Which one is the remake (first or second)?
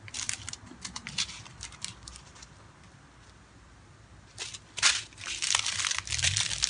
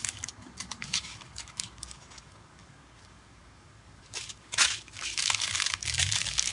second